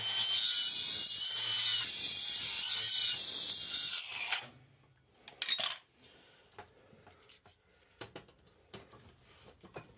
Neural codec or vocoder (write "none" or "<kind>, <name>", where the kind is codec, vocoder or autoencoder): none